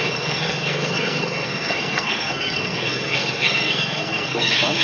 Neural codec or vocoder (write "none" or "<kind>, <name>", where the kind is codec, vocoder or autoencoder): codec, SNAC